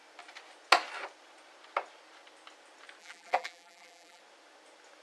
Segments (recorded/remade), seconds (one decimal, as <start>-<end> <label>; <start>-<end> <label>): 0.0-3.0 recorded; 3.0-4.2 remade; 4.2-5.0 recorded